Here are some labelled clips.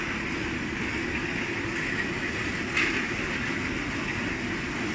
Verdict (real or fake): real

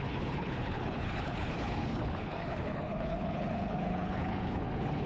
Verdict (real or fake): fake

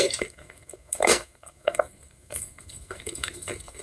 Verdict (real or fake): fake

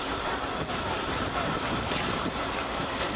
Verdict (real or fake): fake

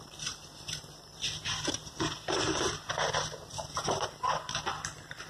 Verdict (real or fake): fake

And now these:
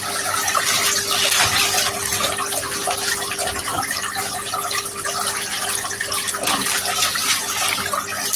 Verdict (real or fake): real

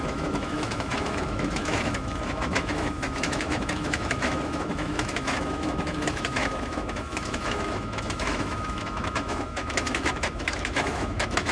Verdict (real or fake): fake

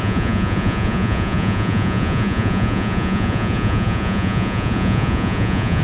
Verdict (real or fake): fake